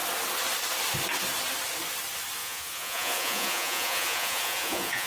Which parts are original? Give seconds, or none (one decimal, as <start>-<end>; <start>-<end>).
0.0-2.4